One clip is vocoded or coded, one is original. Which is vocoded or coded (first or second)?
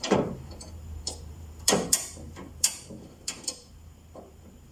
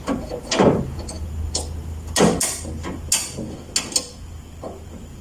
first